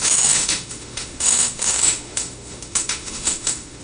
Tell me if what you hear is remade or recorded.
remade